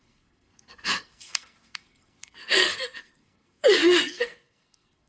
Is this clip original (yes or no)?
no